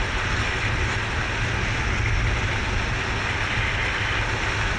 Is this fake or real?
real